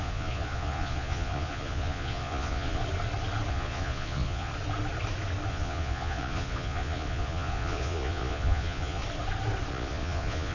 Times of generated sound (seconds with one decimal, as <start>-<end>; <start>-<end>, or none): 0.0-2.8; 3.5-4.5; 5.5-9.0; 9.7-10.5